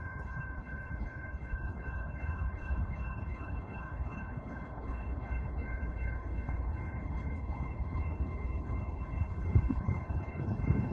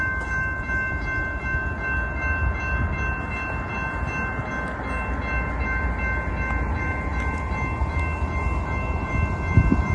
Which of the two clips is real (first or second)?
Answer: second